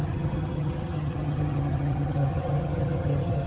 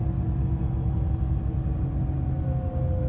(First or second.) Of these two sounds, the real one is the second